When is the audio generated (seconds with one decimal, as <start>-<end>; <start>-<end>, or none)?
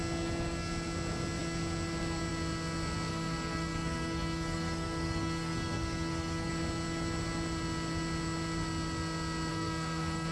3.1-6.5; 9.5-10.3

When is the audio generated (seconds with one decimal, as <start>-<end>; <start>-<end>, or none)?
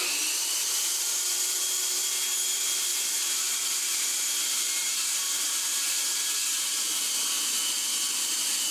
2.9-7.3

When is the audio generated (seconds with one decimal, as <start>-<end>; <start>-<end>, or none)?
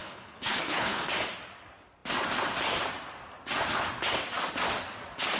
0.0-1.0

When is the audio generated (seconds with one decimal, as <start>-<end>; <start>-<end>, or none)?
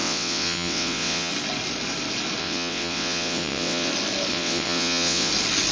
0.0-1.3; 2.4-3.9; 4.3-5.3